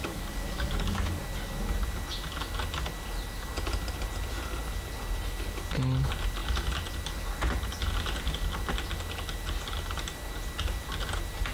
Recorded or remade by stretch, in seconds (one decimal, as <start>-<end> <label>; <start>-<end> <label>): 0.0-1.2 remade; 1.2-11.5 recorded